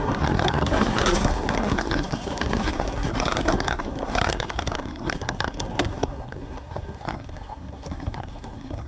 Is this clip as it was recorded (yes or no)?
no